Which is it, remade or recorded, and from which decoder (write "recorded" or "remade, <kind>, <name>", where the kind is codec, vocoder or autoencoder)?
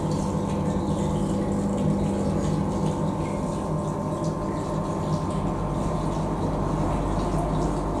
recorded